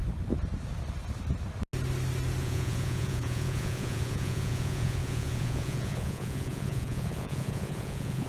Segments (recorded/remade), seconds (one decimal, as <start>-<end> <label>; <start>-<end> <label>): 0.0-2.4 recorded; 2.4-8.3 remade